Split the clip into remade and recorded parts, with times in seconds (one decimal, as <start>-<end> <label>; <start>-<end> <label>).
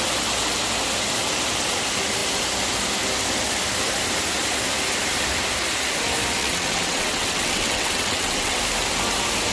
0.0-6.4 recorded; 6.4-8.6 remade; 8.6-9.5 recorded